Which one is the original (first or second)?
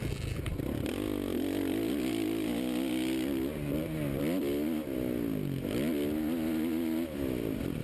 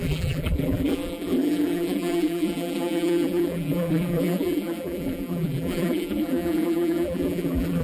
first